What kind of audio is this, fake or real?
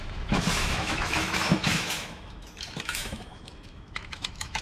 fake